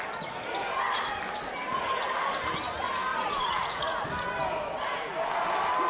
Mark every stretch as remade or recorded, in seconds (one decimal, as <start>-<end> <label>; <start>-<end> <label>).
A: 0.0-3.1 recorded; 3.1-4.0 remade; 4.0-5.9 recorded